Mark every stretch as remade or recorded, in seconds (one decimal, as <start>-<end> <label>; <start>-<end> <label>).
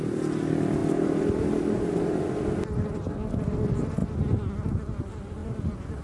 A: 0.0-5.4 recorded; 5.4-6.0 remade